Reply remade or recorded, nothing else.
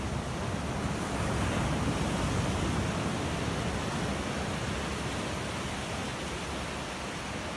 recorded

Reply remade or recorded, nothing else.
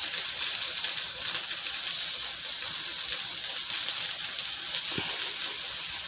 recorded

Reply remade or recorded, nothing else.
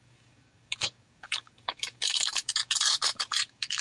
remade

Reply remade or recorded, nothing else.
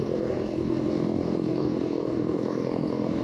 remade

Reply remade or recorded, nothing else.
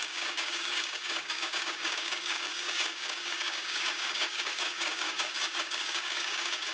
remade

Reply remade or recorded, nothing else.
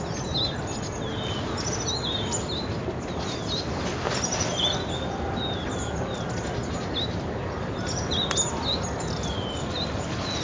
recorded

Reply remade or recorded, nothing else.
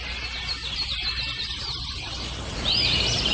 recorded